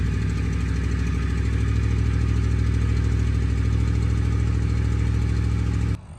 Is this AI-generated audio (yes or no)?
no